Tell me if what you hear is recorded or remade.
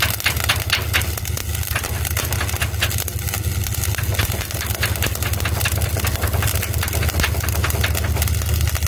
recorded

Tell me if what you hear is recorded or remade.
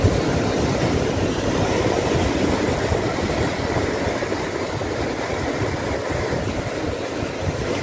recorded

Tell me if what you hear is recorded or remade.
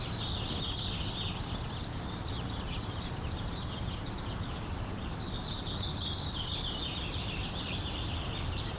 remade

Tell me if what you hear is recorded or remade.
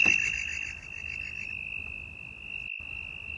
recorded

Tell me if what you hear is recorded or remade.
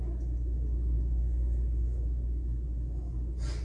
recorded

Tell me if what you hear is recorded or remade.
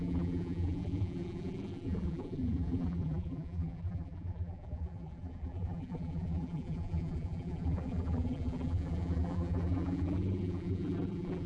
remade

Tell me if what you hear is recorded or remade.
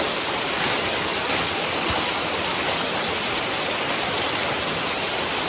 recorded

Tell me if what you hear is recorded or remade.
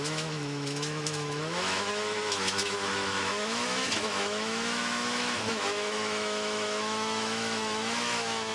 remade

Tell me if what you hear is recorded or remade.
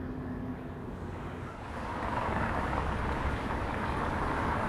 remade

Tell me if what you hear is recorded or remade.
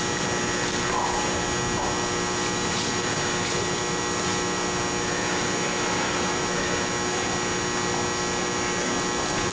recorded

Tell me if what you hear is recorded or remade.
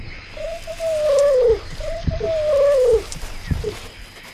recorded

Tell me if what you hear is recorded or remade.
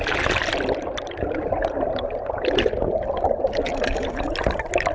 recorded